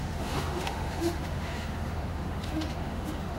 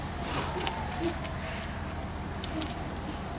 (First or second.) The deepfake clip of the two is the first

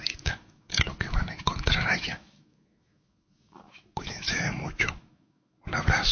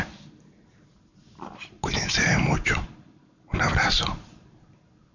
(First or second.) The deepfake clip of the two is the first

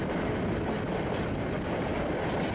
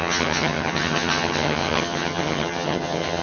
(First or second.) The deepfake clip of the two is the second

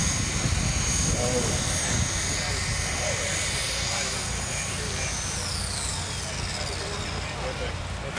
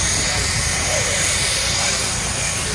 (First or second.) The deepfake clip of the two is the second